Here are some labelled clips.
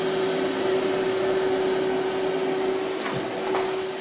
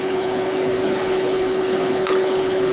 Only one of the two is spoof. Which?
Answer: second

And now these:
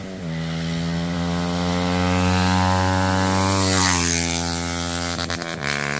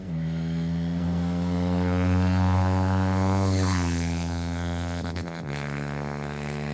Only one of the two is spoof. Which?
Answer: second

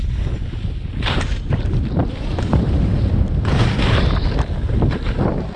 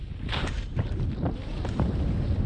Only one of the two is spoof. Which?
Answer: first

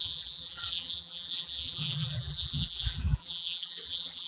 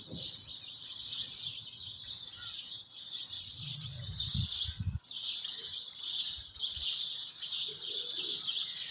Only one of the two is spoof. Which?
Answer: first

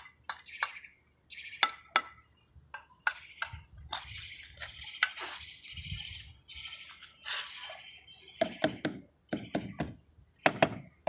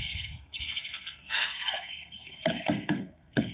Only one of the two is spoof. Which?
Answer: second